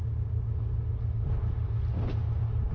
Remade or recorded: recorded